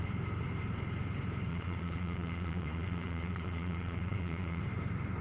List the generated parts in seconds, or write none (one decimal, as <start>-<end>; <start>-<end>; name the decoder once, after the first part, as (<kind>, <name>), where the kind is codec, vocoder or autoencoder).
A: 1.5-4.6 (vocoder, Vocos)